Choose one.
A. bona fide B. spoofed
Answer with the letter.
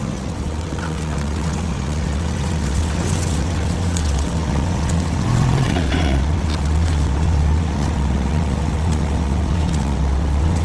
B